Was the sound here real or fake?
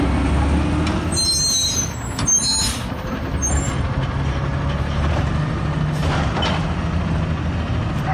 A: real